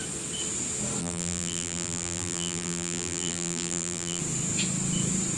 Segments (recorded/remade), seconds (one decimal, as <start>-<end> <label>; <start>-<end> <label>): 0.0-1.0 recorded; 1.0-4.2 remade; 4.2-5.4 recorded